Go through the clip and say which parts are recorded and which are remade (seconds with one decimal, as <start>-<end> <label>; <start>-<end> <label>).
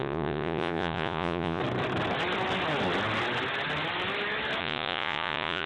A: 0.0-1.6 remade; 1.6-4.6 recorded; 4.6-5.7 remade